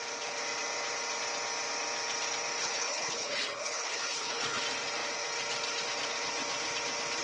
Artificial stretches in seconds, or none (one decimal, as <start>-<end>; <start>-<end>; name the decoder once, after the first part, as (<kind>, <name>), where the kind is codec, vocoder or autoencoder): 2.6-4.6 (codec, HILCodec)